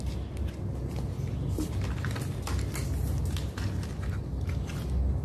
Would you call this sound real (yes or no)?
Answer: yes